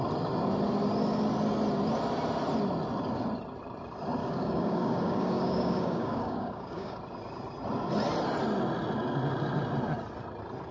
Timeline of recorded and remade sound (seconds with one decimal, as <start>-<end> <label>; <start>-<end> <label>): 0.0-4.2 recorded; 4.2-7.0 remade; 7.0-10.7 recorded